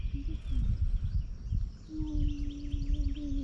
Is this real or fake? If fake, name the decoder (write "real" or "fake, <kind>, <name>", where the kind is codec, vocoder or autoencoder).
real